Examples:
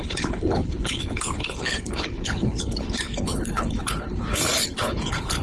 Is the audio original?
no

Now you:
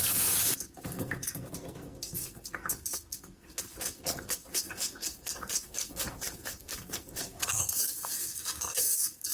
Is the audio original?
no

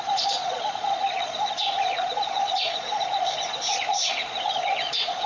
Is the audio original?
no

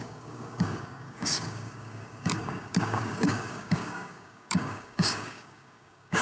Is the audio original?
no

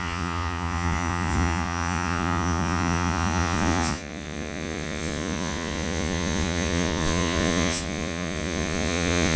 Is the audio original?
no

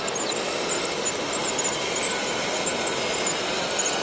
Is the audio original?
yes